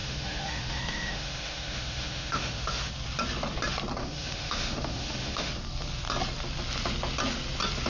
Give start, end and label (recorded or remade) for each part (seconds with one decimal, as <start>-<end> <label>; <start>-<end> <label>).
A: 0.0-2.9 remade; 2.9-4.0 recorded; 4.0-5.5 remade; 5.5-7.9 recorded